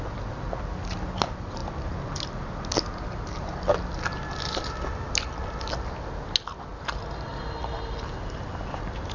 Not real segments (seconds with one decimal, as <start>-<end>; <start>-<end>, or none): none